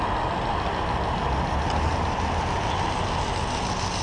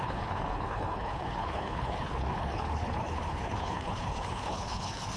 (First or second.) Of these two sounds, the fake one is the second